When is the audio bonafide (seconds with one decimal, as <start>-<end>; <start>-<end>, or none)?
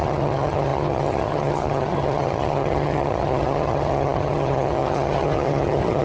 none